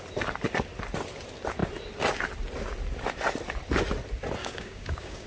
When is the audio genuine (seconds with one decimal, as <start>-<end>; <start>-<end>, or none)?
0.0-4.4